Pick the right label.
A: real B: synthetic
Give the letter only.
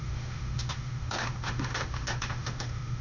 B